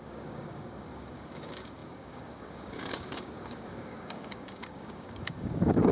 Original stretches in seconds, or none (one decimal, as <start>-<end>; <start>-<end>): none